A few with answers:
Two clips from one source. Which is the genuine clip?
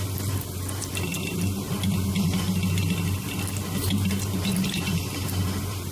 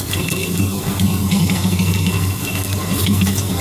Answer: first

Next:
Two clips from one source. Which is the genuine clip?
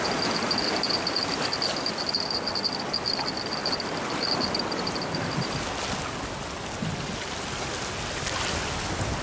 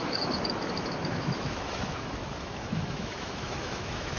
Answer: first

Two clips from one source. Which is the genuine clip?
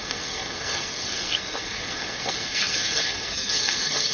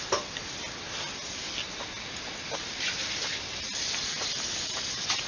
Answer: second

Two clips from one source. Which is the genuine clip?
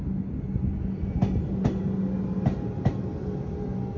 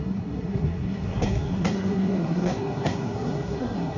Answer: first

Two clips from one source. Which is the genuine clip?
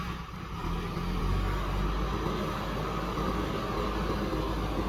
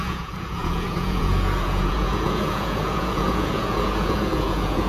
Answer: first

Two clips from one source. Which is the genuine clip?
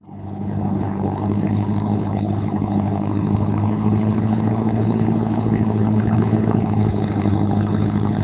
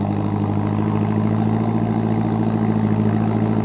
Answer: second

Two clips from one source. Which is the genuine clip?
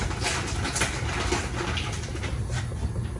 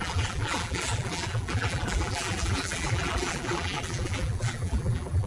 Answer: first